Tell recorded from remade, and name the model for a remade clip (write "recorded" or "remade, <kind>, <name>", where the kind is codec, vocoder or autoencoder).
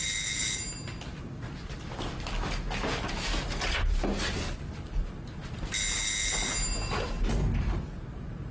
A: recorded